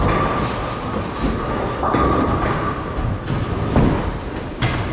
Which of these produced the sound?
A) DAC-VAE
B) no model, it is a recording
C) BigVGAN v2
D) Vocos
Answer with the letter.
B